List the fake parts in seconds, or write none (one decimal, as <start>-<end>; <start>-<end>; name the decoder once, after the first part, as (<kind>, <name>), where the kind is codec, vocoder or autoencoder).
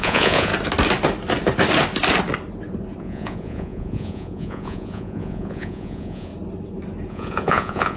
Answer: 0.0-0.5 (vocoder, Vocos); 3.0-6.3; 7.1-8.0